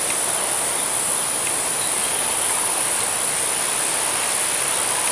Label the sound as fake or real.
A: real